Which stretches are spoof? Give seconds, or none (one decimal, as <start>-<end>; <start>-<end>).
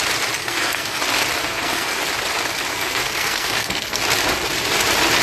0.4-1.0; 1.4-2.0; 2.7-4.0